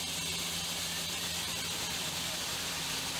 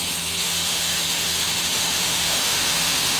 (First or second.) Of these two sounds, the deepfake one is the second